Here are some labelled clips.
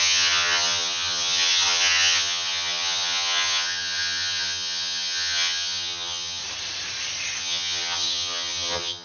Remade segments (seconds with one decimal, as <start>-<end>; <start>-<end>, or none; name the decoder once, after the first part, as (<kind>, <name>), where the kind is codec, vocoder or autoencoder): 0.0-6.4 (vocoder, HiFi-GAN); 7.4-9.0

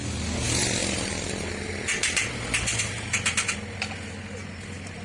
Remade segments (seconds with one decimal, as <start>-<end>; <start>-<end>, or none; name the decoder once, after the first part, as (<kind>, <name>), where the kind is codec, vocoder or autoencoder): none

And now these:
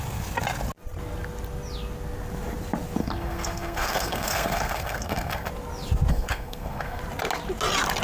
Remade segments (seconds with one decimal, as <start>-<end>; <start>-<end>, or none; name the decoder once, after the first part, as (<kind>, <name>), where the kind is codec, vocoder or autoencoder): 3.0-5.5 (codec, SNAC); 6.1-7.0